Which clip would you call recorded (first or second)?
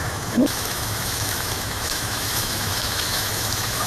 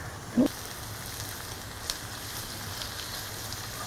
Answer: second